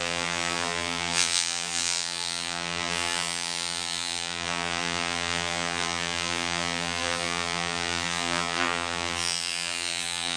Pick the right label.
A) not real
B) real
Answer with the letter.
A